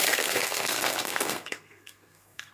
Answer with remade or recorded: remade